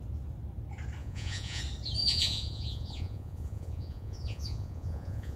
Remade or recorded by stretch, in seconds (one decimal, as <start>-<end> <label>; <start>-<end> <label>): 0.0-1.0 recorded; 1.0-1.6 remade; 1.6-2.0 recorded; 2.0-5.4 remade